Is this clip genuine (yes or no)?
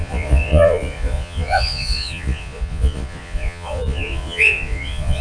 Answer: no